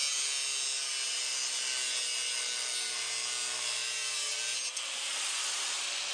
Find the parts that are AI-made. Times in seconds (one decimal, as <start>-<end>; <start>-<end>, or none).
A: none